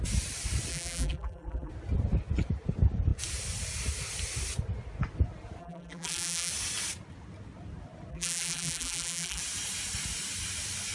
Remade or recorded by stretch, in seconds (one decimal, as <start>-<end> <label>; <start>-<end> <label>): 0.0-0.7 recorded; 0.7-1.7 remade; 1.7-5.6 recorded; 5.6-6.5 remade; 6.5-8.1 recorded; 8.1-9.4 remade; 9.4-10.9 recorded